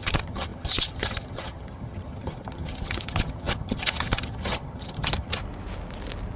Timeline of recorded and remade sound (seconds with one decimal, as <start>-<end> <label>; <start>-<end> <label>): 0.0-5.4 remade; 5.4-6.4 recorded